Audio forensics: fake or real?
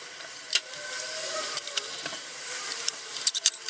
fake